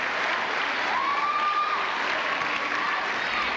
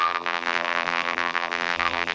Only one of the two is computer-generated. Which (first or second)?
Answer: second